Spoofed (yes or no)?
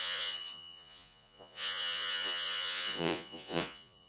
yes